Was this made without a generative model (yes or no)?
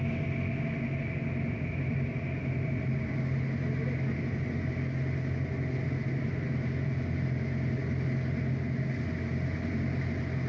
yes